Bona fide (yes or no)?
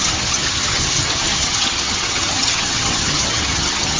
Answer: no